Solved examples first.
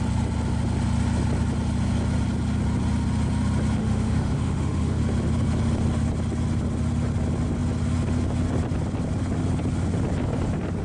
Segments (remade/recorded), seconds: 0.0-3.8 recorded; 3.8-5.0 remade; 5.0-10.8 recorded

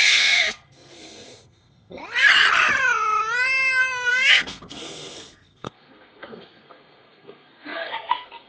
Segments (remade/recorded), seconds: 0.0-2.0 remade; 2.0-4.1 recorded; 4.1-8.5 remade

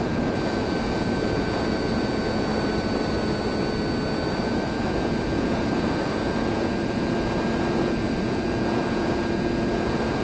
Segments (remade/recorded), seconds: 0.0-2.5 remade; 2.5-4.4 recorded; 4.4-10.2 remade

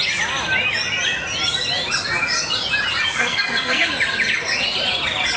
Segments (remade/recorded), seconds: 0.0-3.2 recorded; 3.2-3.9 remade; 3.9-5.4 recorded

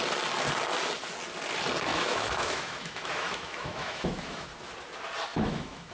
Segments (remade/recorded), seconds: 0.0-1.9 recorded; 1.9-4.5 remade; 4.5-5.3 recorded; 5.3-5.9 remade

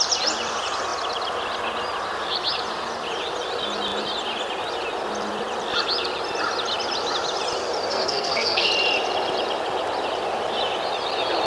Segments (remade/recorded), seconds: 0.0-7.9 recorded; 7.9-8.7 remade; 8.7-11.5 recorded

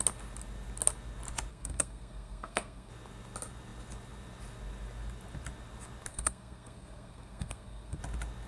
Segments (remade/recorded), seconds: 0.0-1.5 recorded; 1.5-2.9 remade; 2.9-6.1 recorded; 6.1-8.0 remade; 8.0-8.5 recorded